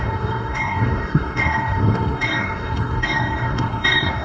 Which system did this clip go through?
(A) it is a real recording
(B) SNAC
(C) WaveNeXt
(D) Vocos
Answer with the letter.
B